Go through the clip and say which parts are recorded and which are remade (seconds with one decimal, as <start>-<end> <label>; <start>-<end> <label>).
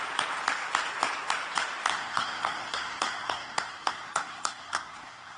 0.0-1.9 recorded; 1.9-5.4 remade